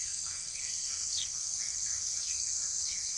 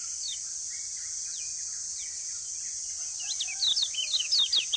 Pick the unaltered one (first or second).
second